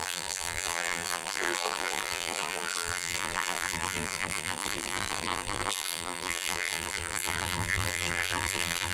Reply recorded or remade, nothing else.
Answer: remade